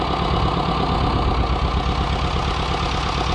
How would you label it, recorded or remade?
recorded